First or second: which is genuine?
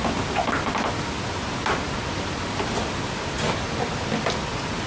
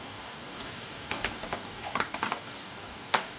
first